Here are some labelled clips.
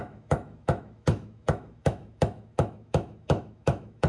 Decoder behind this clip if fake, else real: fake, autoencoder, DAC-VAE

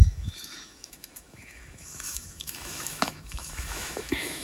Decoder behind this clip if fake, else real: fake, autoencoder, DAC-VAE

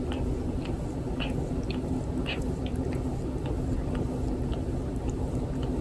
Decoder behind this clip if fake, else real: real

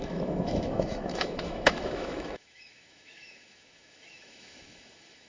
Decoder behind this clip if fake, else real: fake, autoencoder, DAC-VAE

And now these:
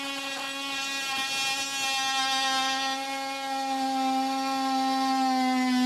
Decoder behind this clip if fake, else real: real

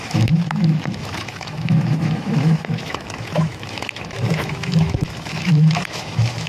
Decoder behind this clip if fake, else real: fake, autoencoder, DAC-VAE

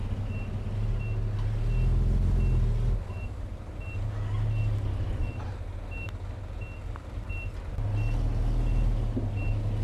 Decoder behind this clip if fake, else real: real